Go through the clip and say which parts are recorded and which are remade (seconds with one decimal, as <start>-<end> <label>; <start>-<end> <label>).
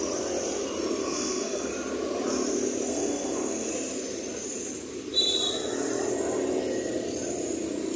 0.0-1.0 recorded; 1.0-1.7 remade; 1.7-2.9 recorded; 2.9-3.7 remade; 3.7-8.0 recorded